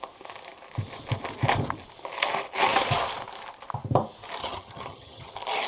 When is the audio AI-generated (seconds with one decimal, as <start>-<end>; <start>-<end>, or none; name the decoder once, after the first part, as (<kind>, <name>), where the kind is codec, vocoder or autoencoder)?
4.4-5.3 (vocoder, HiFi-GAN)